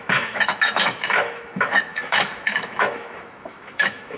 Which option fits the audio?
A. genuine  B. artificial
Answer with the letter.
B